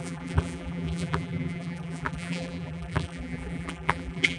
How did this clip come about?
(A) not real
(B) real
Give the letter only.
A